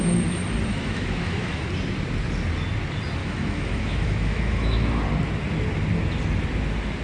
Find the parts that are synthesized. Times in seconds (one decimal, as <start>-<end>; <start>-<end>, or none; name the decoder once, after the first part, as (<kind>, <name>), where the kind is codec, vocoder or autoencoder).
0.7-1.7 (autoencoder, DAC-VAE); 3.2-5.0